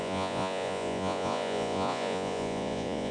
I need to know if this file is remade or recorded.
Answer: remade